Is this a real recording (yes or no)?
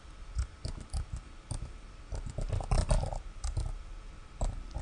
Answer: yes